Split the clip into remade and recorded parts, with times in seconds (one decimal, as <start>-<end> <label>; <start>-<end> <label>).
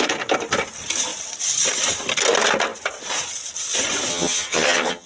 0.0-4.1 recorded; 4.1-5.1 remade